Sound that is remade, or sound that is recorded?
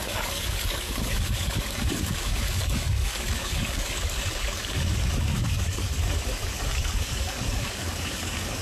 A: remade